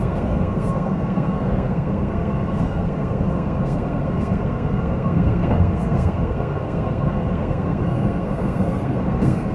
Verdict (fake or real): fake